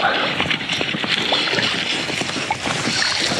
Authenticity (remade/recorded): recorded